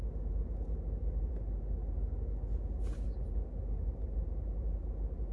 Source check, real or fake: real